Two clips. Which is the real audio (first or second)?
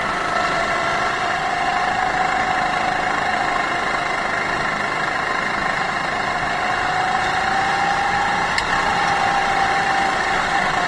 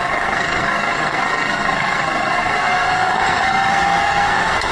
first